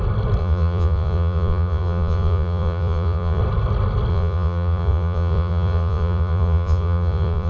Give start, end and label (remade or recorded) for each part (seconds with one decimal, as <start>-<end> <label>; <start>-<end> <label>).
0.0-0.4 recorded; 0.4-3.4 remade; 3.4-4.1 recorded; 4.1-7.5 remade